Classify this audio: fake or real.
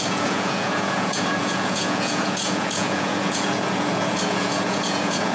fake